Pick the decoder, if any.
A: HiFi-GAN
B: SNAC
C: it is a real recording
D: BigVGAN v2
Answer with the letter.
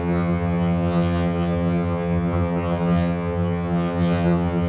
A